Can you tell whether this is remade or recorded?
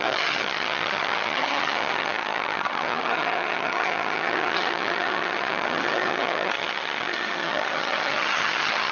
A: remade